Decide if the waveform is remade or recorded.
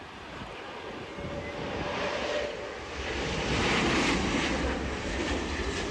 recorded